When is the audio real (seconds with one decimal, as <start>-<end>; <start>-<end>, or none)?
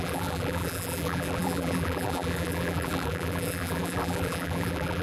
none